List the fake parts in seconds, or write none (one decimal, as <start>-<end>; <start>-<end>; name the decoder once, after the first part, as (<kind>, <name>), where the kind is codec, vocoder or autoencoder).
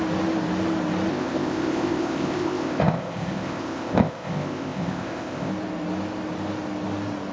1.1-5.5 (codec, ZipCodec)